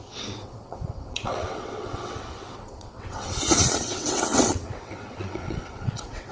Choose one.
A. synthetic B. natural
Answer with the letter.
A